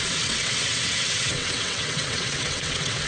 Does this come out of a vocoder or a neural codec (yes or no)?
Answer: yes